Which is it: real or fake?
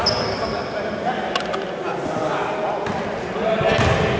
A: real